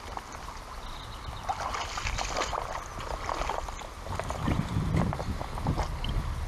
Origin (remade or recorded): recorded